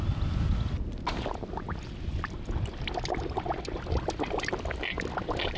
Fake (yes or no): no